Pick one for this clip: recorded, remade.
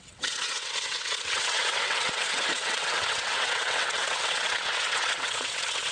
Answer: remade